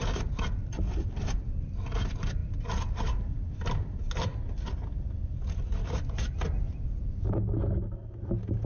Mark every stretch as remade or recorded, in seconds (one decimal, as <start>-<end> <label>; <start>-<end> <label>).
0.0-8.7 recorded